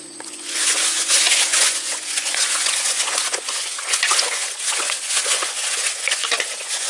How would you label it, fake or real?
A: fake